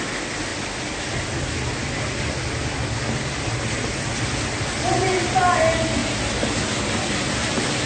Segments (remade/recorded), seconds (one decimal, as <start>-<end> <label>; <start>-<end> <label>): 0.0-7.9 recorded